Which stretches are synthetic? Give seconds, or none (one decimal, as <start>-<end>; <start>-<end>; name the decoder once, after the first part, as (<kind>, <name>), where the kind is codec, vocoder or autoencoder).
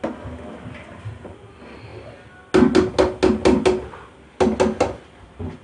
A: none